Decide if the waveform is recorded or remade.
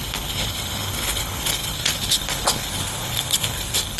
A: remade